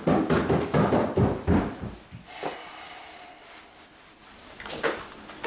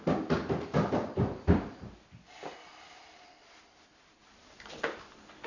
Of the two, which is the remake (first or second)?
second